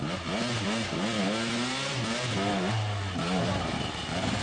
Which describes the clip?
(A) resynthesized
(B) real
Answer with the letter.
B